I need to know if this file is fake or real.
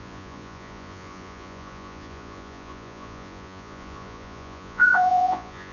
fake